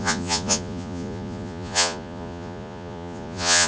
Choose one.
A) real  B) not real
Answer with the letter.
B